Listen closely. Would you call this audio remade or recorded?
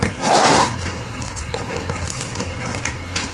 remade